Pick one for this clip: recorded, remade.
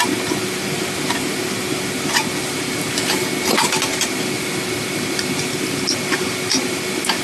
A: recorded